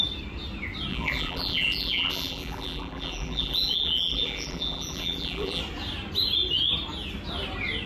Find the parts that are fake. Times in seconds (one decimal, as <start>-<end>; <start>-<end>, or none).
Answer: 0.9-5.6